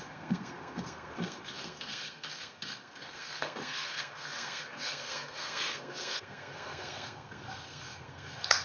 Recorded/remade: remade